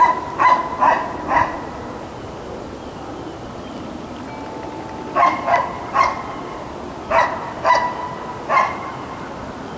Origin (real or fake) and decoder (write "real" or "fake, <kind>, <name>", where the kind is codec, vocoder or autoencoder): real